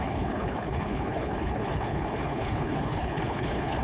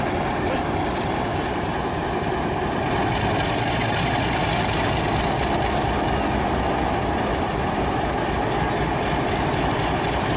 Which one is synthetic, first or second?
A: first